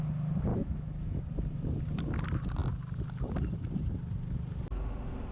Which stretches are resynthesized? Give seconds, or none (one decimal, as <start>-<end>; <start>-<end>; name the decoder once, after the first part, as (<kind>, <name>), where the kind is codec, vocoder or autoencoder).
0.5-1.2 (autoencoder, DAC-VAE)